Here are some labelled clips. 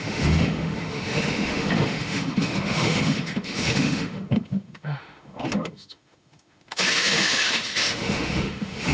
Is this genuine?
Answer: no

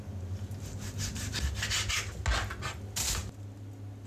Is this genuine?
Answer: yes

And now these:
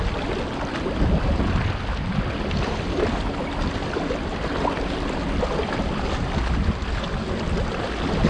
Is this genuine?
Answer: yes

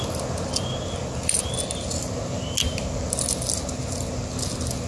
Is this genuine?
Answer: yes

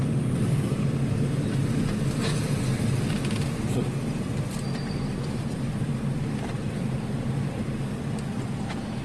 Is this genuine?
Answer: yes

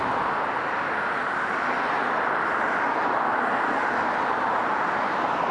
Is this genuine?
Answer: yes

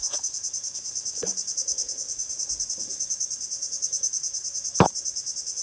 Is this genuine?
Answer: no